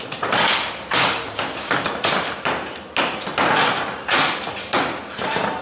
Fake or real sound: real